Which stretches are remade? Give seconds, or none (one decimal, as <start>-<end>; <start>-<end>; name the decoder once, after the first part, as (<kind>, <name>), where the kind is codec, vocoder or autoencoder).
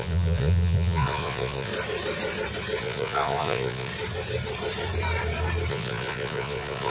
0.0-1.7 (vocoder, Vocos); 2.8-3.9; 5.7-6.9